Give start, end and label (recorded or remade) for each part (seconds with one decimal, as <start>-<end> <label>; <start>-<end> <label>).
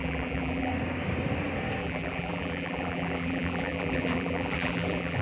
0.0-0.7 remade; 0.7-1.8 recorded; 1.8-5.2 remade